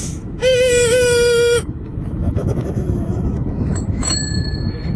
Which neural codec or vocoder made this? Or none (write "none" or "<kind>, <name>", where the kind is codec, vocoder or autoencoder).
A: autoencoder, DAC-VAE